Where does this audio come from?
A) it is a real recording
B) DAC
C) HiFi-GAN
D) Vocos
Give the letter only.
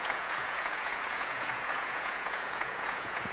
D